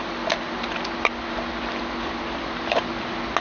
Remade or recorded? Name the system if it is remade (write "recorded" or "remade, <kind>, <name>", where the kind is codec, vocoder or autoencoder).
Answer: recorded